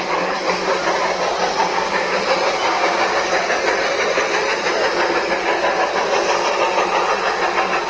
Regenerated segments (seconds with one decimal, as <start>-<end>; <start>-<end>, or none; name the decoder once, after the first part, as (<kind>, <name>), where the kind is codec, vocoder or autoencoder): 1.6-2.2 (codec, DAC); 2.7-3.5